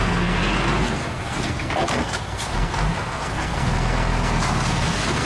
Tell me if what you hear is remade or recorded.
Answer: remade